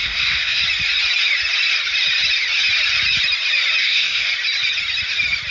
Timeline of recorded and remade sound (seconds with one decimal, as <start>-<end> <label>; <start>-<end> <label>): 0.0-0.6 remade; 0.6-3.8 recorded; 3.8-4.3 remade; 4.3-5.5 recorded